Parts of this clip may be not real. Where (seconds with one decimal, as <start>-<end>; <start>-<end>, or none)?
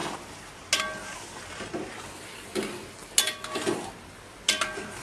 none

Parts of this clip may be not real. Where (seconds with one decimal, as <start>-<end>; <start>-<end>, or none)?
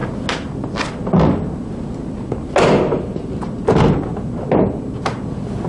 none